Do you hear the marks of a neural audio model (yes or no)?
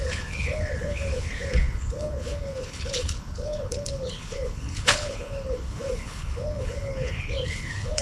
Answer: yes